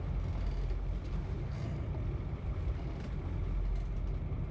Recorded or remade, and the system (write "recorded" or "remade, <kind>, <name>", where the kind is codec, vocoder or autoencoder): recorded